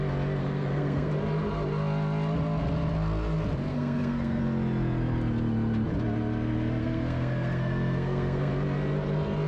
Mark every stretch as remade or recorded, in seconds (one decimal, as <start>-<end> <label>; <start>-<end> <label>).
0.0-0.4 recorded; 0.4-1.1 remade; 1.1-3.7 recorded; 3.7-4.4 remade; 4.4-6.8 recorded; 6.8-8.5 remade; 8.5-9.5 recorded